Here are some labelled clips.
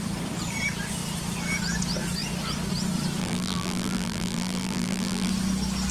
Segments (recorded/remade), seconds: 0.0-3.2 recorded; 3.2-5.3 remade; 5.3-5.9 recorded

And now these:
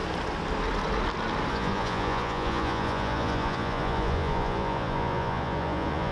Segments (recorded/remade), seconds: 0.0-1.5 recorded; 1.5-6.1 remade

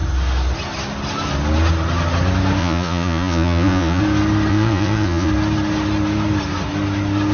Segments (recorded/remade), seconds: 0.0-2.6 recorded; 2.6-4.0 remade; 4.0-4.5 recorded; 4.5-5.3 remade; 5.3-7.3 recorded

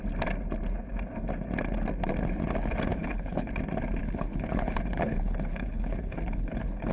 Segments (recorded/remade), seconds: 0.0-2.9 recorded; 2.9-3.5 remade; 3.5-4.0 recorded; 4.0-6.9 remade

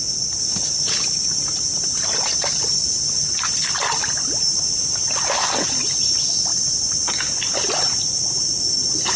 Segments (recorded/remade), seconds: 0.0-9.2 recorded